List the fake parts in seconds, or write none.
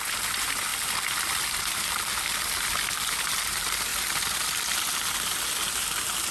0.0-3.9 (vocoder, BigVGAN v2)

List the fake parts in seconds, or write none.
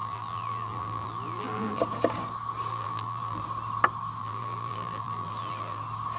0.0-1.8 (vocoder, BigVGAN v2); 2.7-3.4; 4.2-5.8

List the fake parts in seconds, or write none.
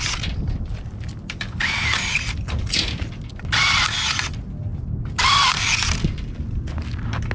0.7-3.3 (vocoder, BigVGAN v2); 4.7-5.8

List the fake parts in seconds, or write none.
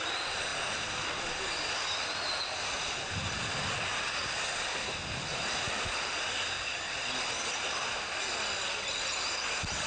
5.3-6.1 (vocoder, BigVGAN v2)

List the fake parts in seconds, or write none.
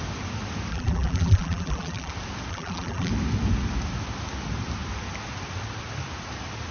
0.7-2.1 (vocoder, BigVGAN v2); 2.5-3.1